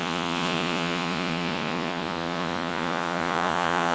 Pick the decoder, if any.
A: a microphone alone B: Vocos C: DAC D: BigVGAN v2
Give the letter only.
B